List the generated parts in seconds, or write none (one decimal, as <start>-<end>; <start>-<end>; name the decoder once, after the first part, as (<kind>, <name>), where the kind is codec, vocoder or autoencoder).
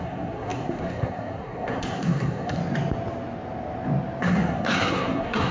0.0-2.6 (codec, SNAC); 4.2-5.5